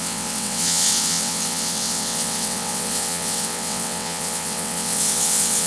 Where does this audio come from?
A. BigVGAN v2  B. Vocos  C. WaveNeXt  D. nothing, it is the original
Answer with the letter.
C